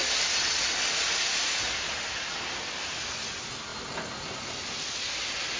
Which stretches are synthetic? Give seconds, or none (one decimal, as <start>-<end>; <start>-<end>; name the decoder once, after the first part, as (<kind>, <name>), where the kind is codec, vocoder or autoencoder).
none